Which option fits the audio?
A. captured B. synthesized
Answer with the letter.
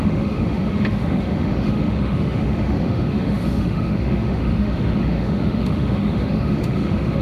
B